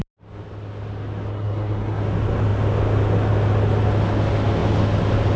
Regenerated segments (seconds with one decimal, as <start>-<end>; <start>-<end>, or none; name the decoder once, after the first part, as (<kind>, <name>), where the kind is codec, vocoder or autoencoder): 1.3-2.0 (codec, SNAC)